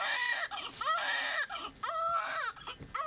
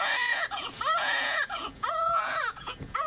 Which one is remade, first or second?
second